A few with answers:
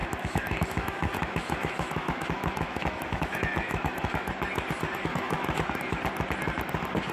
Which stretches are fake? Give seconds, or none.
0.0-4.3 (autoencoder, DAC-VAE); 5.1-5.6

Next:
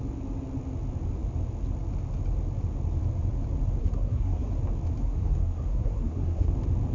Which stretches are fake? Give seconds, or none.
3.8-4.5 (codec, SNAC); 5.0-6.5

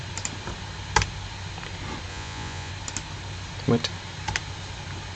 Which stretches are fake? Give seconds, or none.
2.1-2.7 (vocoder, Vocos)